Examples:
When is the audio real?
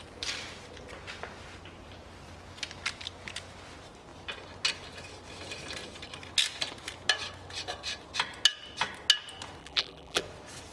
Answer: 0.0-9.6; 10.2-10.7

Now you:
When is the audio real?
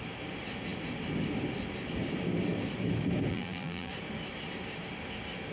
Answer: 0.0-3.3; 3.9-5.5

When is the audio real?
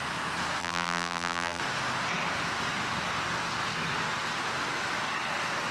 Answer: 0.0-0.6; 1.6-5.7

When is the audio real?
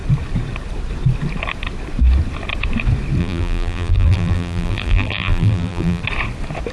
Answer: 0.0-3.2; 6.0-6.7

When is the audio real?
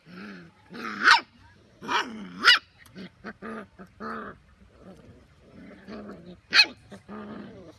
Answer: none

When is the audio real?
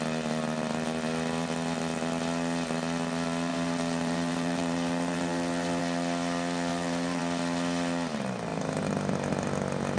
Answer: 0.0-3.5; 5.8-6.7; 7.2-10.0